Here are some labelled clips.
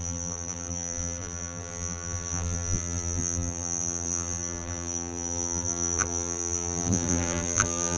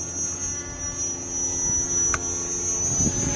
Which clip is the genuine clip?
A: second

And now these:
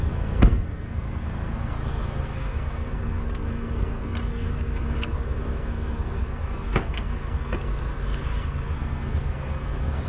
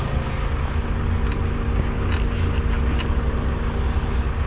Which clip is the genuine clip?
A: second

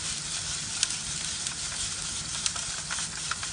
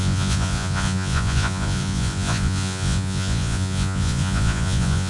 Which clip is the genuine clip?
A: first